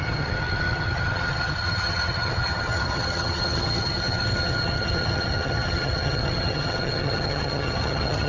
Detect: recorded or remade remade